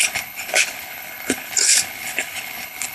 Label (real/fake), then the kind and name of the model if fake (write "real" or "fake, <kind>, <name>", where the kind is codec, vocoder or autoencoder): fake, codec, HILCodec